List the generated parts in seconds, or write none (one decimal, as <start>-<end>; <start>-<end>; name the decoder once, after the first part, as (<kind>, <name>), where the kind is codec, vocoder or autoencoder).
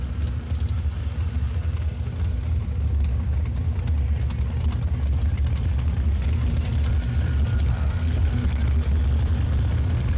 7.7-8.6 (codec, SNAC)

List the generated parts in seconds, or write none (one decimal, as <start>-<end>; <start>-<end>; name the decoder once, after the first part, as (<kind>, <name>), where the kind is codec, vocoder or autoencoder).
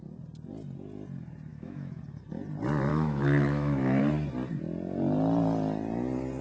1.5-2.0 (autoencoder, DAC-VAE); 2.9-4.0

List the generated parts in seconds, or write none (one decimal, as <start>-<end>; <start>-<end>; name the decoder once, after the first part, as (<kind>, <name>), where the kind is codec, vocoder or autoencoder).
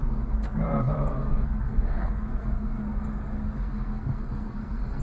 0.0-5.0 (codec, SNAC)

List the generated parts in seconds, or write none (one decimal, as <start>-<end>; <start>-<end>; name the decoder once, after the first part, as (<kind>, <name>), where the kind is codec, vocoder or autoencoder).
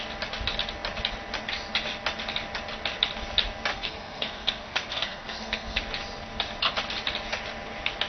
3.7-5.8 (codec, SNAC)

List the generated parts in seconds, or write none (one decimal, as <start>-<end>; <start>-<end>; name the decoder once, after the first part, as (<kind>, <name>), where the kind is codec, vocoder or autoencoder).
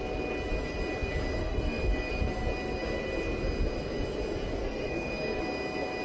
1.4-2.1 (codec, SNAC); 4.6-5.4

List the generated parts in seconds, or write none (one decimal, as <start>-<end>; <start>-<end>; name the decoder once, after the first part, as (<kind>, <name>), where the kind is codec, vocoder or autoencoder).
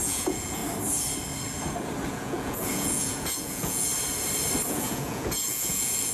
0.0-0.6 (vocoder, Vocos); 2.1-3.9; 4.7-6.1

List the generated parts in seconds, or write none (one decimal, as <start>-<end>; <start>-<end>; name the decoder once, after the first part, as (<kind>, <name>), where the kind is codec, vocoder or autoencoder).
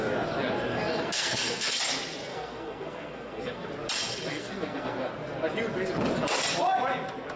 0.7-1.7 (codec, SNAC); 2.3-3.7; 4.3-5.1